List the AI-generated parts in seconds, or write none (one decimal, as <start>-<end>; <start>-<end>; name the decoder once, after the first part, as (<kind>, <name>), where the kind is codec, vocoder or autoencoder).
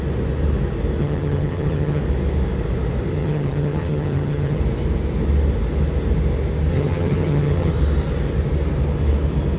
1.0-2.0 (vocoder, HiFi-GAN); 3.1-4.6; 6.7-7.7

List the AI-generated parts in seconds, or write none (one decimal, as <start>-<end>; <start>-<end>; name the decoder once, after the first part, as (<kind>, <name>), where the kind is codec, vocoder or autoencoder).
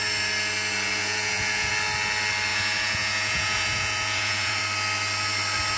1.0-1.7 (vocoder, Vocos); 2.5-4.6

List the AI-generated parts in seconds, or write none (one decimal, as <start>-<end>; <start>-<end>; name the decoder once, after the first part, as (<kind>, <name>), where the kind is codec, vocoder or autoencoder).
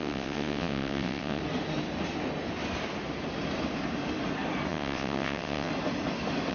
0.0-1.4 (vocoder, WaveNeXt); 4.7-5.7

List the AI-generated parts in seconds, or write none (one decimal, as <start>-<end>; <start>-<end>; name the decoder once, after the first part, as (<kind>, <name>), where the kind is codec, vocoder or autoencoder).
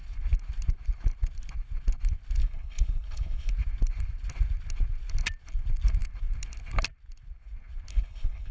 2.4-3.5 (codec, HILCodec); 7.9-8.5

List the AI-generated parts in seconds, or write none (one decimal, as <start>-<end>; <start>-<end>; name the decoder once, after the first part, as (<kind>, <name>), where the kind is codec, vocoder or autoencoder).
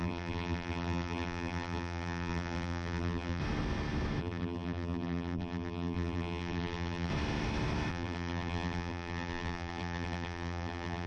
0.0-3.4 (vocoder, BigVGAN v2); 4.2-7.1; 7.9-11.1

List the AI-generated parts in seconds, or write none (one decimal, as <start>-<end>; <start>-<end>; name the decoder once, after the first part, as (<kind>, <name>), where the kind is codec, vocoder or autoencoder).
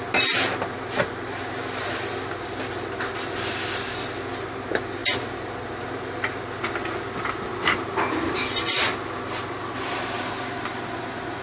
none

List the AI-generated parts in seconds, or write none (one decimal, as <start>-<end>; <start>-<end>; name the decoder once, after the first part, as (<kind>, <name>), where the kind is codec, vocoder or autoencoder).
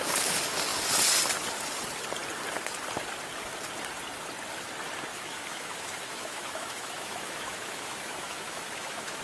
5.1-9.2 (autoencoder, DAC-VAE)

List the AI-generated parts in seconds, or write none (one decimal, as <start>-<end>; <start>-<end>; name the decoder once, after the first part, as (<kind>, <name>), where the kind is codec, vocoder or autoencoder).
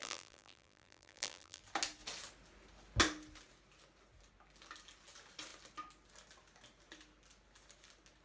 0.0-1.6 (vocoder, BigVGAN v2)